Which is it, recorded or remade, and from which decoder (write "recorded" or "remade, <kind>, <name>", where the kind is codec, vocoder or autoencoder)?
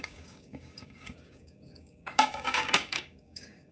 remade, codec, DAC